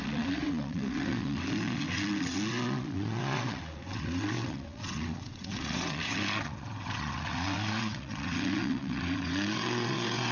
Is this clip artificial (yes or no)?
yes